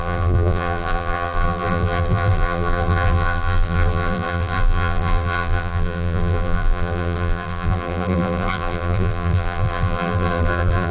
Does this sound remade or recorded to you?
remade